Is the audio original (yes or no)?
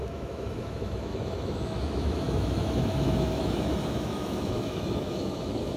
no